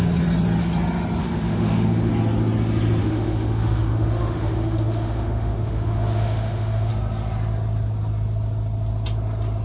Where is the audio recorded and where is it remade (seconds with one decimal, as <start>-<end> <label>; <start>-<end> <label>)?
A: 0.0-1.2 recorded; 1.2-2.1 remade; 2.1-3.0 recorded; 3.0-6.9 remade; 6.9-9.6 recorded